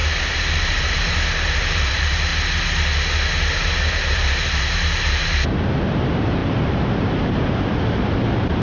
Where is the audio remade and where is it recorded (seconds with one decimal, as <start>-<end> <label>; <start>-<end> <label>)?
0.0-2.3 remade; 2.3-3.7 recorded; 3.7-8.6 remade